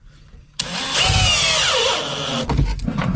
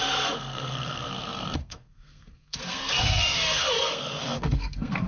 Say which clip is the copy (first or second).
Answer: second